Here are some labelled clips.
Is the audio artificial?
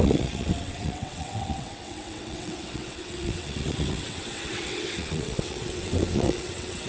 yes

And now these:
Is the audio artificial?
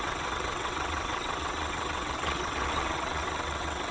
yes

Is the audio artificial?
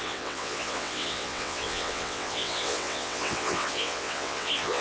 yes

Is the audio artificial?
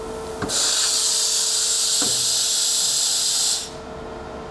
no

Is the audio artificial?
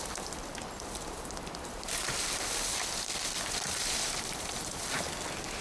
no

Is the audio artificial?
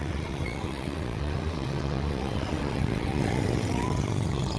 yes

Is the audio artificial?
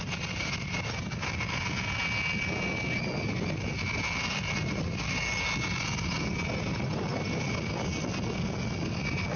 no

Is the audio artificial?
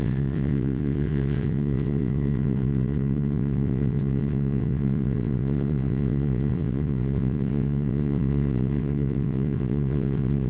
yes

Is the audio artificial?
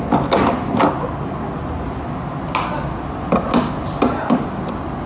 no